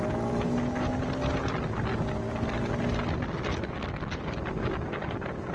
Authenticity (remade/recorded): recorded